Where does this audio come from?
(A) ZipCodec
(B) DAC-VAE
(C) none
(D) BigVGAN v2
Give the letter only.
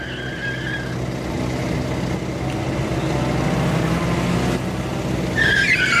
C